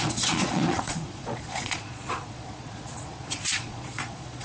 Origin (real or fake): fake